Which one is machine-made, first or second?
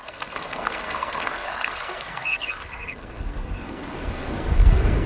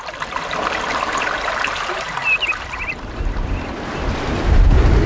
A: first